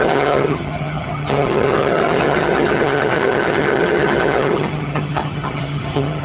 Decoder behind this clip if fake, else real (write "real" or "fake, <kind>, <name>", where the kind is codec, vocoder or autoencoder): fake, vocoder, HiFi-GAN